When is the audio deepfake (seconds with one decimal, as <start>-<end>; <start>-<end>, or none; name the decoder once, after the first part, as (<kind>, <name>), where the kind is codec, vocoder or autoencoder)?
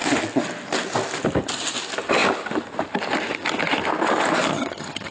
4.5-5.1 (vocoder, HiFi-GAN)